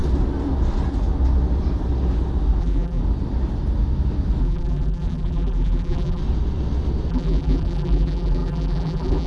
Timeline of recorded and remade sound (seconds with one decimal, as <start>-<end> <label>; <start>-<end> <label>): 0.0-2.6 recorded; 2.6-3.0 remade; 3.0-4.4 recorded; 4.4-6.2 remade; 6.2-7.1 recorded; 7.1-9.3 remade